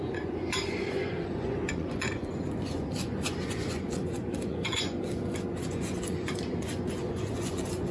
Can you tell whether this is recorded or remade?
remade